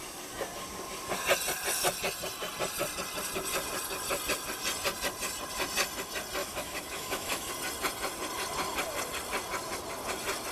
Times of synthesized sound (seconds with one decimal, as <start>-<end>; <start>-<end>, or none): 6.4-7.5